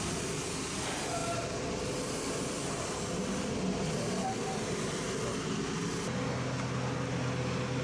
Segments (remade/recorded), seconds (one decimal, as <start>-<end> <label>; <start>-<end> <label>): 0.0-7.8 recorded